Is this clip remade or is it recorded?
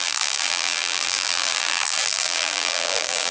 remade